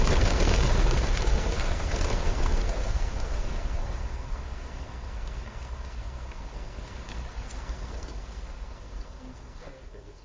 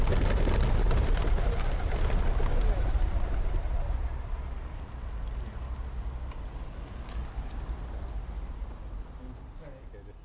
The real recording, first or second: second